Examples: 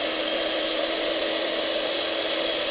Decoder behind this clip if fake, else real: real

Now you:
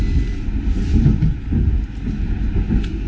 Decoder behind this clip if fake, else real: real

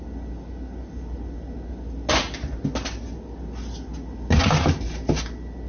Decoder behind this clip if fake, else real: real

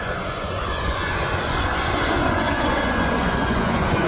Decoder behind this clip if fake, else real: fake, vocoder, Vocos